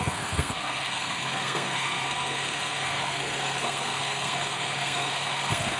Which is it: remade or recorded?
remade